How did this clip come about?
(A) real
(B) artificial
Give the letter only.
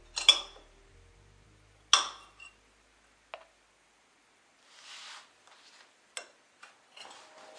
A